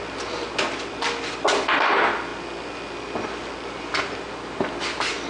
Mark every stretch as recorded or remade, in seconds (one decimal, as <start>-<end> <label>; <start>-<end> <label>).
0.0-5.3 recorded